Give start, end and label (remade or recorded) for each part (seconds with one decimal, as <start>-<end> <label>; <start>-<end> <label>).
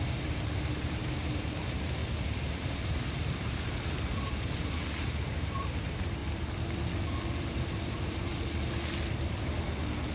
0.0-2.0 remade; 2.0-2.6 recorded; 2.6-6.2 remade; 6.2-7.4 recorded; 7.4-8.3 remade; 8.3-10.1 recorded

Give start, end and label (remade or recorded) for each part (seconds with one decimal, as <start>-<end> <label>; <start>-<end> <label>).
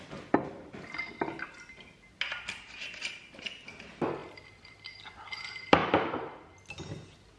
0.0-7.4 recorded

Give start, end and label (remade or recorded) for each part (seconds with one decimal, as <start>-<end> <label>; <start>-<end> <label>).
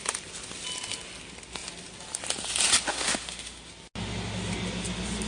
0.0-2.9 recorded; 2.9-3.7 remade; 3.7-5.3 recorded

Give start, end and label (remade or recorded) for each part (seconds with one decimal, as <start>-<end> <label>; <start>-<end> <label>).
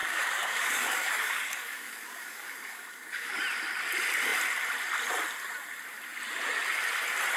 0.0-3.4 remade; 3.4-7.4 recorded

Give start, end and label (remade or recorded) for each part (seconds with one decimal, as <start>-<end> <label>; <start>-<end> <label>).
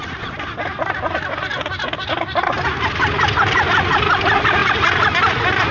0.0-5.7 recorded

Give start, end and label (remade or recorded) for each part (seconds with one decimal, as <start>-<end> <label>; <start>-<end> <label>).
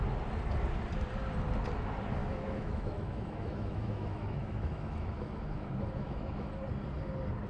0.0-2.2 recorded; 2.2-6.6 remade; 6.6-7.5 recorded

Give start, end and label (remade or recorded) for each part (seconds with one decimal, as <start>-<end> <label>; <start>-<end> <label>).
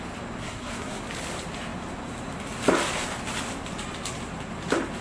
0.0-0.4 recorded; 0.4-1.0 remade; 1.0-5.0 recorded